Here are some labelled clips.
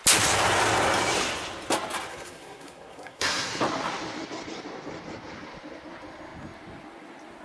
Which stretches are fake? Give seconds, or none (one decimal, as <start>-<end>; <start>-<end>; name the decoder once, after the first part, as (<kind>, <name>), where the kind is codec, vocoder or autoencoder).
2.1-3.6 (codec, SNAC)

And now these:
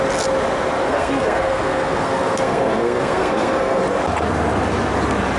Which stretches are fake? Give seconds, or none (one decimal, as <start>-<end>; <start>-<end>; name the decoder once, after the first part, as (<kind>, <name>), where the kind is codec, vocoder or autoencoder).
0.8-3.8 (codec, SNAC)

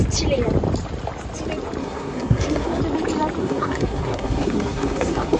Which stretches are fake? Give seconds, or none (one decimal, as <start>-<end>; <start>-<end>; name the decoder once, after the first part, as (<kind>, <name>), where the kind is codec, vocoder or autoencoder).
1.8-2.8 (codec, SNAC); 3.4-5.4

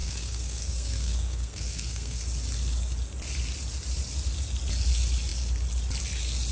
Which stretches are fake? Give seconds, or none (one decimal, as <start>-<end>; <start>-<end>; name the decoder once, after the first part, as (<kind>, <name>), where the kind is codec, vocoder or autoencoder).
0.0-2.2 (codec, SNAC)

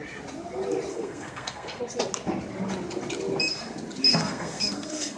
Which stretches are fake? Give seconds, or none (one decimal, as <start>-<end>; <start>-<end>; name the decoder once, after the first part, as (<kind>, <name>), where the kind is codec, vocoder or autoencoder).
0.9-1.8 (codec, SNAC); 4.1-5.2

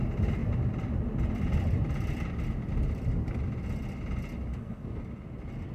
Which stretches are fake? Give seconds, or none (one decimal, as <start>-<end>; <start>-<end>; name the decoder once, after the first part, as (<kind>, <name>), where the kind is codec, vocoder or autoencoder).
4.5-5.0 (codec, SNAC)

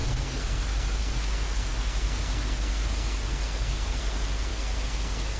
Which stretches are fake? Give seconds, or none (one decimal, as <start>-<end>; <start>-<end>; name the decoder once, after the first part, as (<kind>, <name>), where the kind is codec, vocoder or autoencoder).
0.0-5.4 (codec, SNAC)

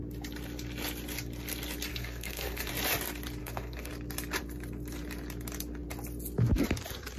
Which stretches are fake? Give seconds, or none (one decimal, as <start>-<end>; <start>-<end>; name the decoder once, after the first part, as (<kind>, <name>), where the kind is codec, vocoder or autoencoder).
1.9-2.7 (codec, SNAC); 3.4-3.9